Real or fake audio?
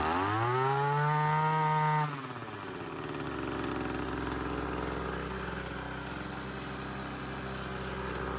real